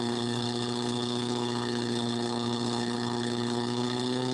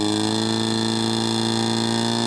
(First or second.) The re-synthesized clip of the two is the first